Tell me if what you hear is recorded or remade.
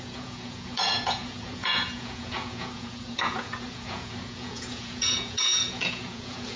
remade